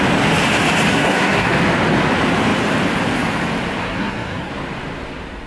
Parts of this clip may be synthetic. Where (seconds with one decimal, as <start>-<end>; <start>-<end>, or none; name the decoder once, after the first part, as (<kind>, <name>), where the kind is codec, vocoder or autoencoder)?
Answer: 0.9-1.5 (codec, SNAC); 3.8-4.5